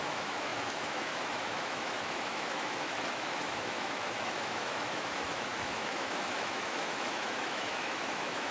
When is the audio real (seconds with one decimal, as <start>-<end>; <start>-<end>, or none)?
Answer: none